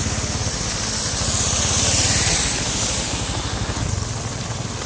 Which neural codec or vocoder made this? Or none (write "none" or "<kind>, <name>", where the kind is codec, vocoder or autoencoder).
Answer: vocoder, BigVGAN v2